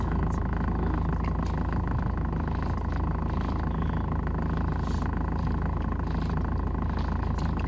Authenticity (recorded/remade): recorded